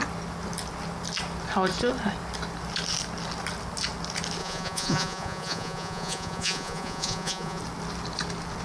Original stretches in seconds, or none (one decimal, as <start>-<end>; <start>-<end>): 0.0-4.4; 7.6-8.6

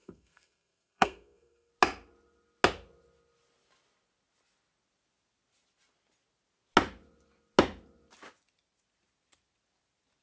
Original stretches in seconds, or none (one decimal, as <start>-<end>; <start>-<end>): 1.7-10.2